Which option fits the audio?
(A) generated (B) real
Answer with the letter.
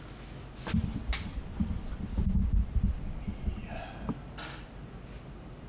B